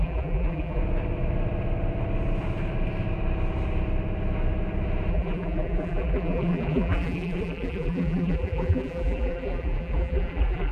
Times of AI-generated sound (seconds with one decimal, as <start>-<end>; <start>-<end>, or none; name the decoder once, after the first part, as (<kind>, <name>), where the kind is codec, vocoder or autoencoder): 0.0-0.8 (vocoder, BigVGAN v2); 5.1-10.7